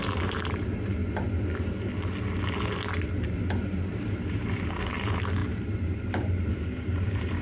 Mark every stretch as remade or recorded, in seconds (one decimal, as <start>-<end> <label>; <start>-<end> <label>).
0.0-1.0 remade; 1.0-3.5 recorded; 3.5-7.4 remade